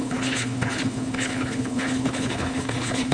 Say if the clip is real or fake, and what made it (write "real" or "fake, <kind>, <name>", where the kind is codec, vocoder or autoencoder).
fake, codec, HILCodec